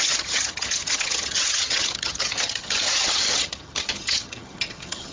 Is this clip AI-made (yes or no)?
yes